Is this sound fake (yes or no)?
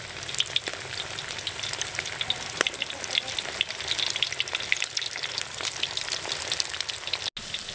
no